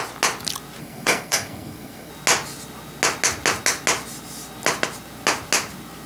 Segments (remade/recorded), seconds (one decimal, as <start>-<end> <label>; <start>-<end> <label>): 0.0-0.8 recorded; 0.8-2.1 remade; 2.1-6.1 recorded